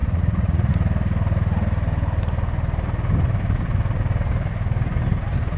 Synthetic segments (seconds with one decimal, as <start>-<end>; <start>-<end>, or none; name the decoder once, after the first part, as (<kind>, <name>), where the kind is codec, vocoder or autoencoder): 0.0-0.7 (vocoder, Vocos)